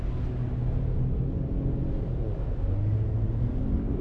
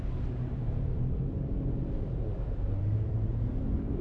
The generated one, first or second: second